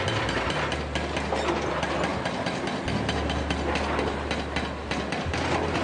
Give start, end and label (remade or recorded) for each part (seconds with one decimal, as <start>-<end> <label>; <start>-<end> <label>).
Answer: 0.0-5.8 recorded